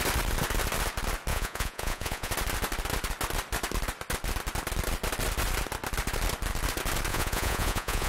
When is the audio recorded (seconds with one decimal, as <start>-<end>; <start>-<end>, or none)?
0.0-1.3; 2.3-7.1